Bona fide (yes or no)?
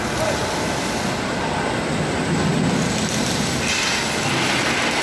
yes